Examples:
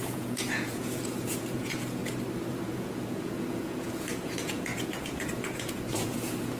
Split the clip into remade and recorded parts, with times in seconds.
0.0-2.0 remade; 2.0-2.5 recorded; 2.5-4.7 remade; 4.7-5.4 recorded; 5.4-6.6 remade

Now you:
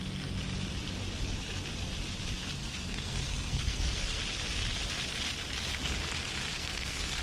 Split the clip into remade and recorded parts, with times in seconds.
0.0-2.6 recorded; 2.6-4.2 remade; 4.2-6.5 recorded; 6.5-7.2 remade